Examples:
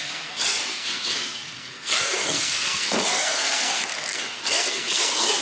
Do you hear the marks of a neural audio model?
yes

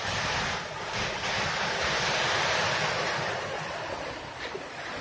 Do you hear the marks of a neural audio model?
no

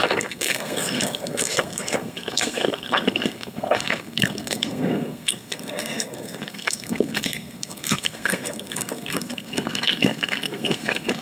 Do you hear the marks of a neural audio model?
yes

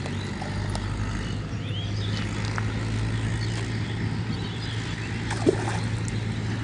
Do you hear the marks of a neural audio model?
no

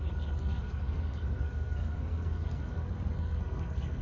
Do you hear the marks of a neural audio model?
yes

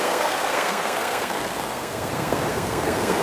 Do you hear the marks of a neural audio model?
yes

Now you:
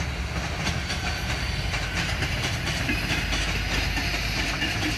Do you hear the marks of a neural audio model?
no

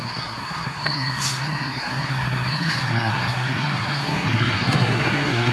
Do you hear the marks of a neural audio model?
yes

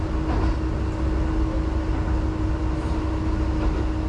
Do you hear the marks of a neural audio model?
no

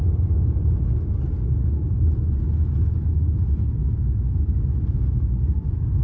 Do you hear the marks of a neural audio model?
no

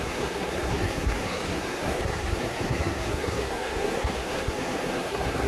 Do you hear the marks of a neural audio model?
yes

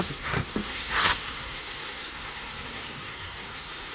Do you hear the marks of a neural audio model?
yes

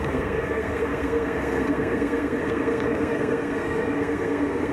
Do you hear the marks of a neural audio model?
yes